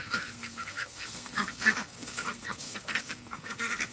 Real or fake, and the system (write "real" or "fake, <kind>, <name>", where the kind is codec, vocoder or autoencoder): fake, codec, SNAC